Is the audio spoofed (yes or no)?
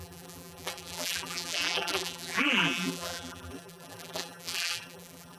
yes